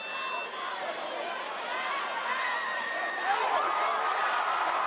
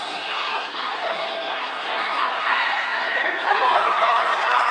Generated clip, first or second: second